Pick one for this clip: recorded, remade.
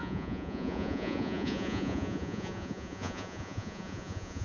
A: remade